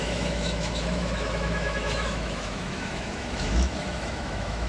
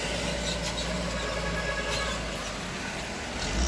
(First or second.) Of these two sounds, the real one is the second